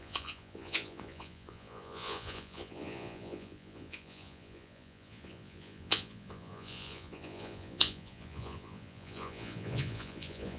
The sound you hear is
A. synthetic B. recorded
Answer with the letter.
A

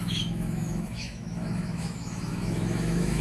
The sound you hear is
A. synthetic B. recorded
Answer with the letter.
A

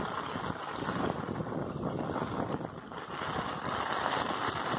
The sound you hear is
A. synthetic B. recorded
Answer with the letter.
B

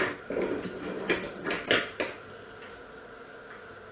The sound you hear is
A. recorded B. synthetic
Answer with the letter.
A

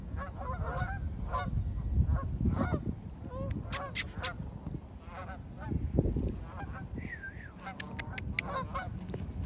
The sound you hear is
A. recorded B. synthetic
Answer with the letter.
A